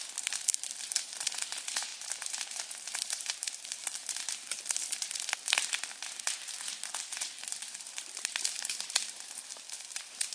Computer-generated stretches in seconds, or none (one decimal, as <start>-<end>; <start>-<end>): 0.0-1.9; 2.7-4.0; 4.6-10.3